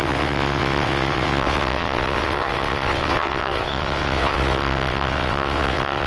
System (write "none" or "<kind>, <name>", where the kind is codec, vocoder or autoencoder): vocoder, WaveNeXt